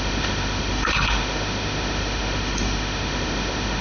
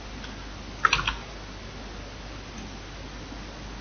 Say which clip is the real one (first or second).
second